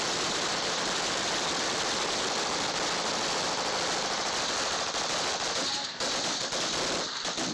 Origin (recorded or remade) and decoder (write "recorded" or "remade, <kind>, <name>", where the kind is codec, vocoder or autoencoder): recorded